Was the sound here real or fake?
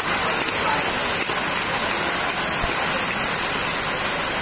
real